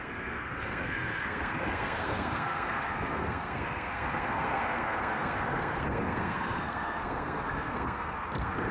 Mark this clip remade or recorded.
remade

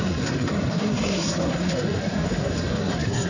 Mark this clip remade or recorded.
remade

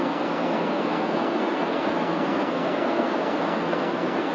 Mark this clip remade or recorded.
remade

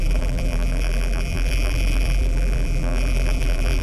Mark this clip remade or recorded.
remade